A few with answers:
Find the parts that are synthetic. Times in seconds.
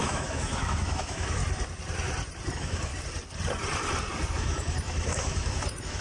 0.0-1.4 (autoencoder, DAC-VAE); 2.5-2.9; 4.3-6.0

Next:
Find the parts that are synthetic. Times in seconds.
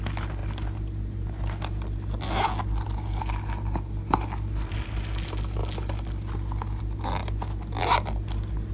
none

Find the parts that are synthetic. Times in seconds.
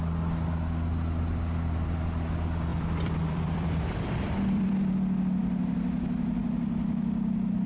2.7-4.9 (vocoder, BigVGAN v2)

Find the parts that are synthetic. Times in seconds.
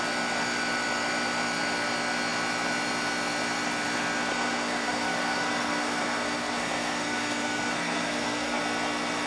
4.3-8.6 (codec, SNAC)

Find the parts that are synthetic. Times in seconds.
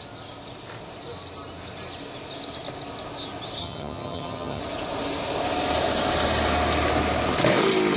3.6-4.6 (vocoder, HiFi-GAN)